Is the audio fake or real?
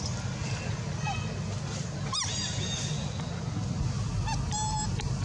real